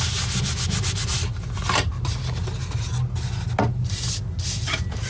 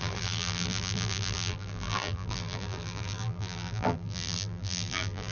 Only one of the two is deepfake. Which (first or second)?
second